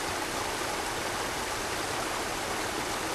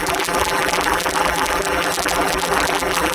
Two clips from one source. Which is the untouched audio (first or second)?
first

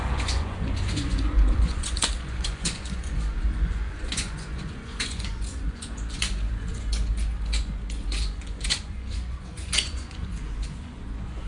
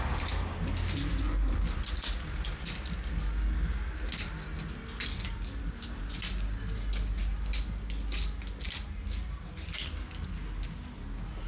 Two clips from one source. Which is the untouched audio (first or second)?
second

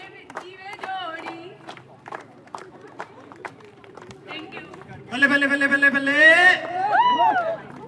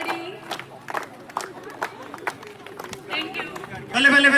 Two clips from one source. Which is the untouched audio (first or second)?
second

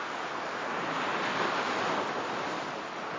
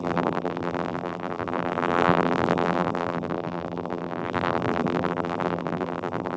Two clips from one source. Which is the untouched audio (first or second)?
first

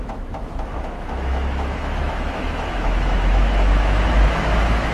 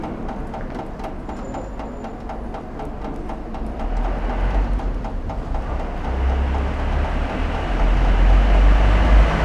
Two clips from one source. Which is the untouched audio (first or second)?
second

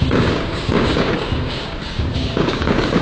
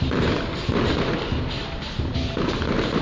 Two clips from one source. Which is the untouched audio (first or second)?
second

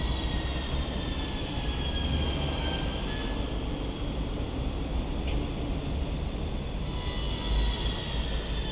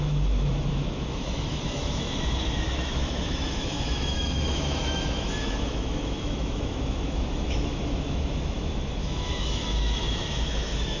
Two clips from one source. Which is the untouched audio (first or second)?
first